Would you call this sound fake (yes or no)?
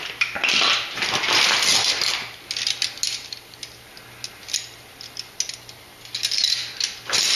no